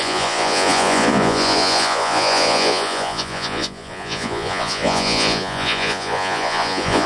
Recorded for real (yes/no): no